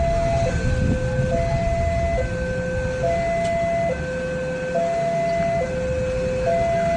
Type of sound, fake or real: real